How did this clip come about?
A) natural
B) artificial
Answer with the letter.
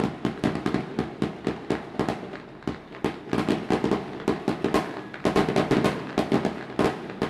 A